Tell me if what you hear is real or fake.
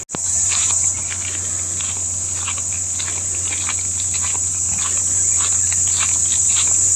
real